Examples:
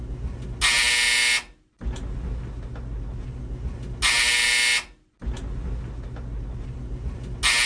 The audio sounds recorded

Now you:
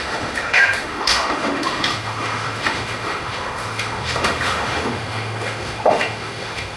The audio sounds remade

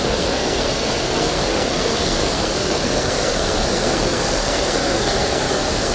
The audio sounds remade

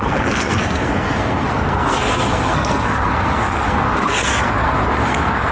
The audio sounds remade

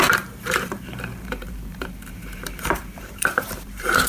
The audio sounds remade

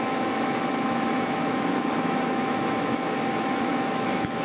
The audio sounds remade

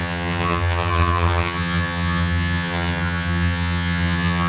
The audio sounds remade